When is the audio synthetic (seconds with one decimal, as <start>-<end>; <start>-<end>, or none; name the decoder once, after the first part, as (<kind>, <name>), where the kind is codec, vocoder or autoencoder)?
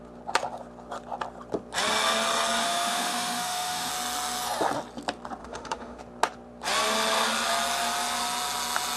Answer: 2.6-3.9 (autoencoder, DAC-VAE); 5.4-6.0